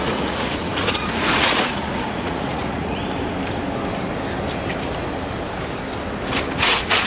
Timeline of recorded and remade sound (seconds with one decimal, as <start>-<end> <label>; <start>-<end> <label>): 0.0-3.0 remade; 3.0-6.4 recorded; 6.4-7.1 remade